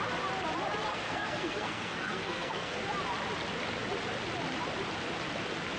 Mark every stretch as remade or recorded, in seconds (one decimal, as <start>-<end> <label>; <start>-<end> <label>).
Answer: 0.0-0.9 recorded; 0.9-2.8 remade; 2.8-5.8 recorded